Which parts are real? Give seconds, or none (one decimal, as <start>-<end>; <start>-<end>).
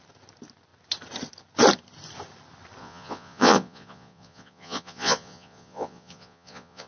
0.0-2.8